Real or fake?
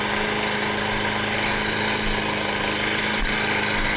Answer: real